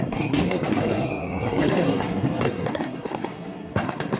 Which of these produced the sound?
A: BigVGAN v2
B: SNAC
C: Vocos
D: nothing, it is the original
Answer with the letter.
B